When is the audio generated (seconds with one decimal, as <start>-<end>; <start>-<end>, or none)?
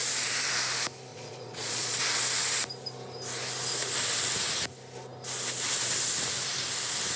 1.1-2.0